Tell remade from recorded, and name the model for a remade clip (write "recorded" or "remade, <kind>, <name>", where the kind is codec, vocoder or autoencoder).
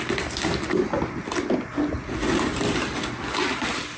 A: recorded